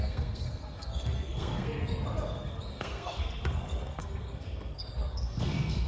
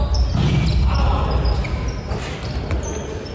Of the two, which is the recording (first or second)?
second